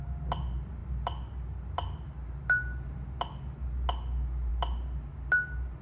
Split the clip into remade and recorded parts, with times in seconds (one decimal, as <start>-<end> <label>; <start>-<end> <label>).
0.0-5.8 recorded